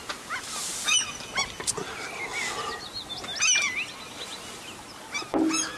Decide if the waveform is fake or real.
real